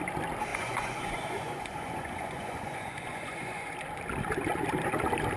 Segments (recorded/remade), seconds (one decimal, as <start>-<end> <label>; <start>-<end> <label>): 0.0-0.5 recorded; 0.5-3.7 remade; 3.7-5.4 recorded